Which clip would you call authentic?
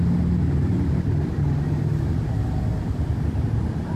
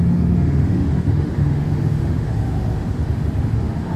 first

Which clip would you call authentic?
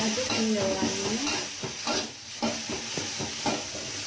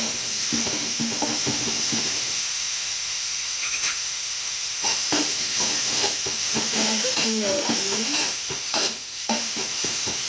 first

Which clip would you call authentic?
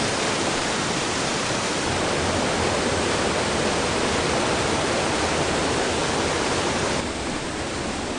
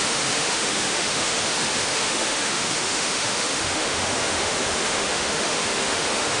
first